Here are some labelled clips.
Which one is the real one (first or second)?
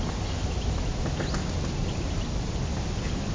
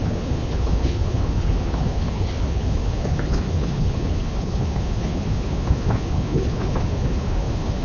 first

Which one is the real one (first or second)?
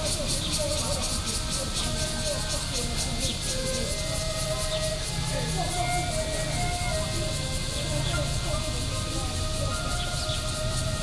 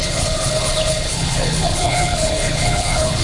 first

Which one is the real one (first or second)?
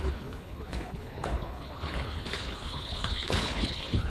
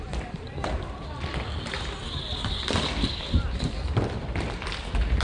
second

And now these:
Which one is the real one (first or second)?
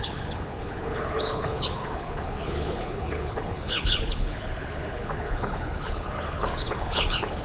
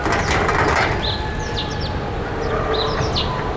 second